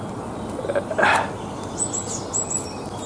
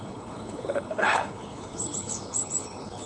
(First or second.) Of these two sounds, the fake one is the second